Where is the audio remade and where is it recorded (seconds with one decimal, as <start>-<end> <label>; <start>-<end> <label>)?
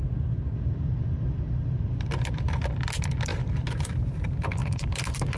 0.0-3.3 recorded; 3.3-3.9 remade; 3.9-4.6 recorded; 4.6-5.4 remade